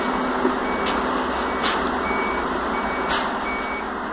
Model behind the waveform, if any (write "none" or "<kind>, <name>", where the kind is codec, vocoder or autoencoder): none